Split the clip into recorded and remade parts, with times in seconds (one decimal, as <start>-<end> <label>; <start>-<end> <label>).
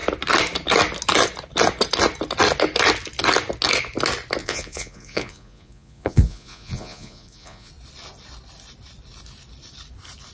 0.0-4.4 recorded; 4.4-7.7 remade; 7.7-10.3 recorded